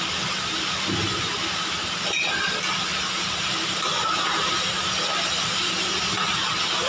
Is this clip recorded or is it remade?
recorded